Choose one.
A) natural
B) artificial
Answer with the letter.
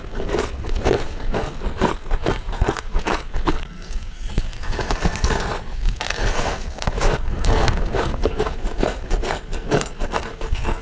B